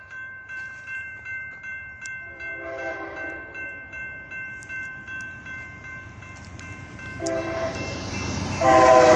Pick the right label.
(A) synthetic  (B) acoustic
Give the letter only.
A